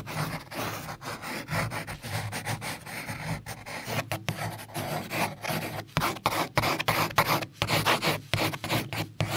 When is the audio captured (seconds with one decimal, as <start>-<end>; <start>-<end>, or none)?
0.0-9.4